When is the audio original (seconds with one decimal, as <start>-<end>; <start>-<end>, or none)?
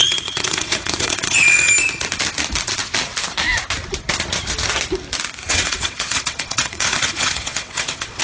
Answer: 1.7-5.4